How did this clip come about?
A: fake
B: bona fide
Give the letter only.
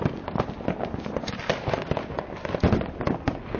B